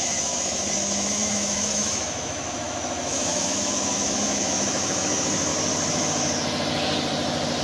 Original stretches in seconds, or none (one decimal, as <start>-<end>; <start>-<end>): 5.5-7.6

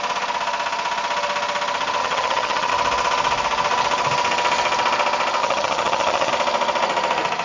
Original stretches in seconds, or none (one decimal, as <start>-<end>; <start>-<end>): 0.0-2.0; 2.7-5.4; 6.3-7.4

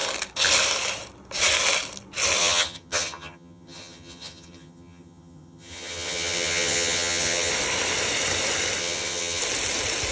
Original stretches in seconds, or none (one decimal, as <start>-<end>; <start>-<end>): 0.0-2.4; 7.5-8.8; 9.4-10.1

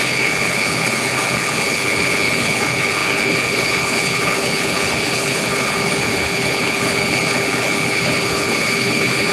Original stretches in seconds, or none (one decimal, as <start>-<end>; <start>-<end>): none

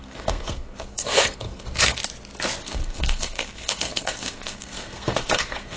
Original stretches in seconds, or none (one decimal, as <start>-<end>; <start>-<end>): 2.0-2.6

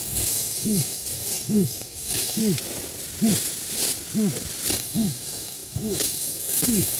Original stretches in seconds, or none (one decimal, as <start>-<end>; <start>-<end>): 2.4-4.7

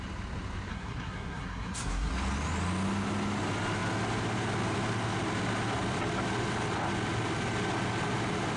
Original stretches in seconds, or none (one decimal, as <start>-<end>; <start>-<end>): 0.0-0.7; 2.1-8.6

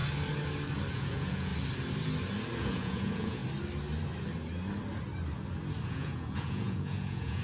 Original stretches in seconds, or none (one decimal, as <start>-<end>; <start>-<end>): 0.0-0.9; 1.5-2.6; 3.4-5.9